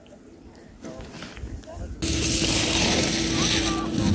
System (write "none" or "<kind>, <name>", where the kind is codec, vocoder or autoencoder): none